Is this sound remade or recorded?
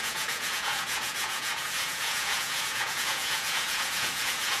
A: remade